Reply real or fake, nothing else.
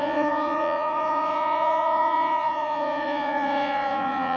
fake